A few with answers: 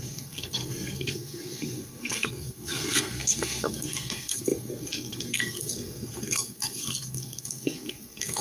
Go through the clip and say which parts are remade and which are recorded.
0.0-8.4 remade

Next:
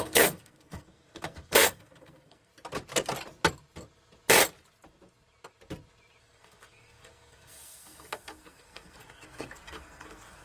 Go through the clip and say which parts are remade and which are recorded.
0.0-2.5 remade; 2.5-6.2 recorded; 6.2-10.4 remade

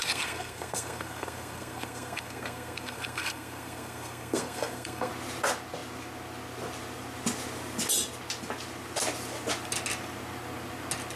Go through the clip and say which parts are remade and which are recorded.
0.0-5.1 remade; 5.1-11.2 recorded

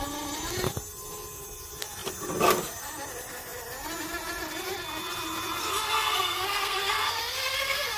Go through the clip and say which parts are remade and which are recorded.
0.0-5.6 recorded; 5.6-8.0 remade